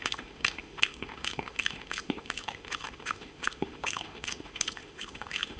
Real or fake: fake